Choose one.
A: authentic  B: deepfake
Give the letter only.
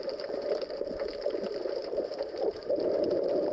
A